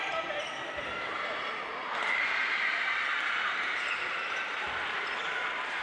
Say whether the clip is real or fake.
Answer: fake